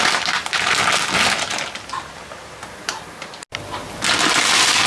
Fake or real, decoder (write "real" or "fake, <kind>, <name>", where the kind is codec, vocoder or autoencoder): real